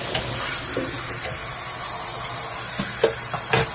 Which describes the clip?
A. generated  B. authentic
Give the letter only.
B